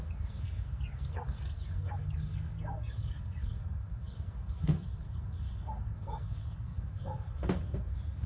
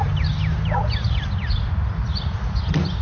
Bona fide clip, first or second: second